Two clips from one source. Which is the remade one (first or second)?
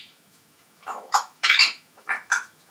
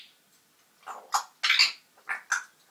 first